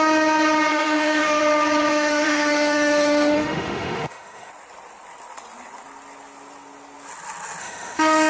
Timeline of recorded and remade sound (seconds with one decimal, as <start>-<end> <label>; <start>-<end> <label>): 0.0-0.7 recorded; 0.7-1.4 remade; 1.4-1.9 recorded; 1.9-4.5 remade; 4.5-7.6 recorded; 7.6-8.3 remade